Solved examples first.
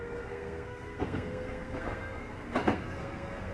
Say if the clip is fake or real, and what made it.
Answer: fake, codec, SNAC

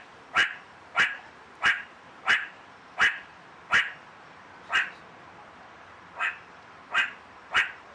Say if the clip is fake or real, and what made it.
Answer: fake, vocoder, BigVGAN v2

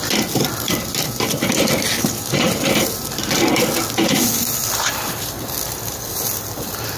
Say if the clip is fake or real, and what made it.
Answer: real